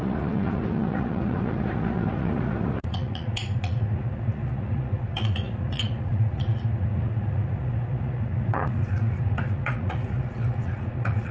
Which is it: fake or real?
fake